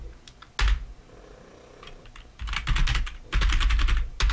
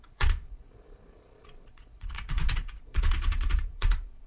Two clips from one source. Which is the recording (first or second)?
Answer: first